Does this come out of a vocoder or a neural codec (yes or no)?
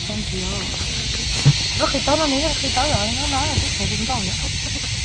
no